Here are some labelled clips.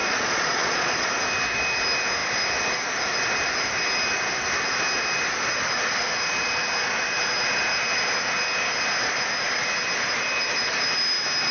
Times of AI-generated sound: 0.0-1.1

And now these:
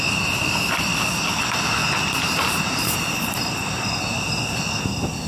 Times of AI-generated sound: 1.8-4.3

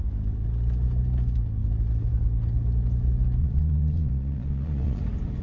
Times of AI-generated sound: 3.4-5.0